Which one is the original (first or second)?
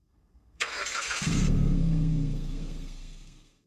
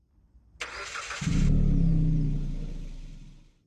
second